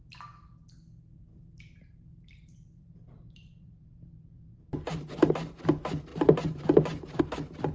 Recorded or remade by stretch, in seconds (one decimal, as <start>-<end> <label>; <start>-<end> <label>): 0.0-1.3 recorded; 1.3-5.3 remade; 5.3-6.1 recorded; 6.1-7.2 remade; 7.2-7.7 recorded